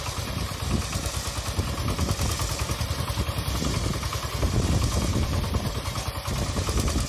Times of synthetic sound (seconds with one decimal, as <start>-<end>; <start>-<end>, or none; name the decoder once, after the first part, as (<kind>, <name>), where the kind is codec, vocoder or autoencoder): 5.1-6.1 (vocoder, BigVGAN v2)